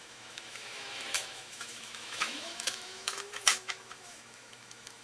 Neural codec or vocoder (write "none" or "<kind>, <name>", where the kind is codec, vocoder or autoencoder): autoencoder, DAC-VAE